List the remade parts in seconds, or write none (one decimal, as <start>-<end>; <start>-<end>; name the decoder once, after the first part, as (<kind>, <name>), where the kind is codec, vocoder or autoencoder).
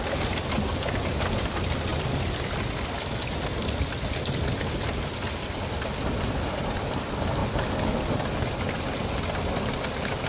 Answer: none